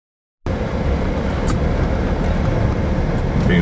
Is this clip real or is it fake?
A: real